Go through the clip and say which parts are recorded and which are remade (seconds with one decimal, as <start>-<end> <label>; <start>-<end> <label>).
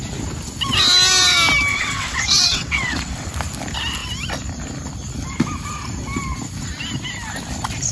0.0-1.7 recorded; 1.7-3.3 remade; 3.3-7.9 recorded